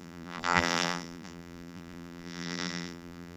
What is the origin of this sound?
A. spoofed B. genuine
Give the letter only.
A